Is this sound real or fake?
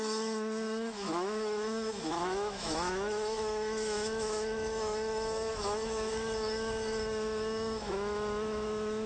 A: fake